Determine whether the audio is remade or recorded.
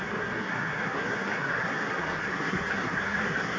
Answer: remade